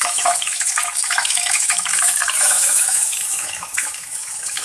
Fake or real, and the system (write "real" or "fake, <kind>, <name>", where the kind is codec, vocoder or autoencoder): fake, autoencoder, DAC-VAE